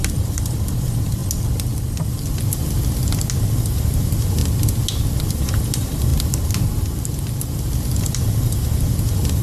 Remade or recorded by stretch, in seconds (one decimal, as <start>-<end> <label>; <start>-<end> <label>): 0.0-1.2 remade; 1.2-3.6 recorded; 3.6-4.4 remade; 4.4-5.2 recorded; 5.2-6.1 remade; 6.1-8.0 recorded; 8.0-9.4 remade